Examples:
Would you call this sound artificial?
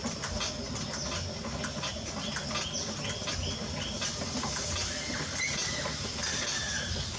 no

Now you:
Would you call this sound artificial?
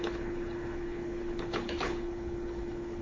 yes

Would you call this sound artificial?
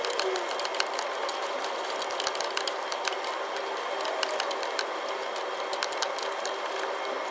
no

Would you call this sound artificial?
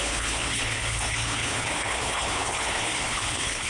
yes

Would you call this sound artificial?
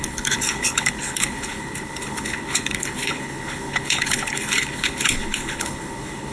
yes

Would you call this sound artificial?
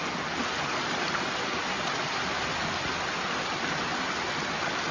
no